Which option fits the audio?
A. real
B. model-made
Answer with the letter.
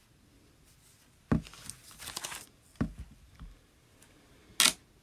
A